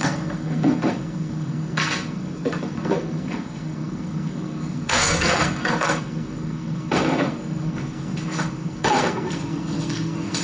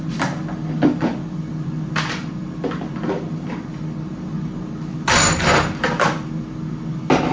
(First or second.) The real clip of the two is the second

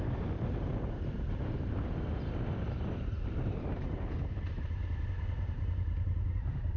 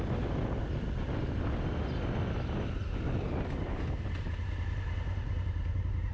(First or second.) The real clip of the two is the second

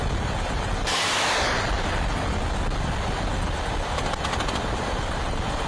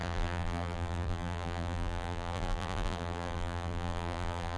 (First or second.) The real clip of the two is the first